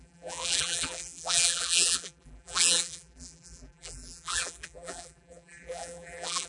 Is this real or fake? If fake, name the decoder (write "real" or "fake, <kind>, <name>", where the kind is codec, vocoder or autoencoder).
fake, vocoder, BigVGAN v2